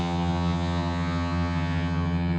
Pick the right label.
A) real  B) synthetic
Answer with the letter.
B